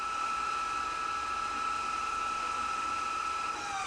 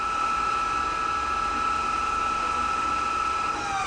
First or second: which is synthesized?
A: first